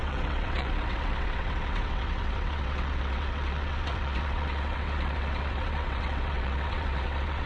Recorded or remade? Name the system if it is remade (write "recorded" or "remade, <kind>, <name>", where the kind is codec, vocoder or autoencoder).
remade, vocoder, WaveNeXt